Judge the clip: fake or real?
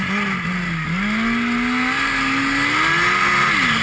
real